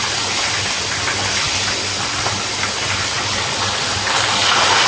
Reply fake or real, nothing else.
real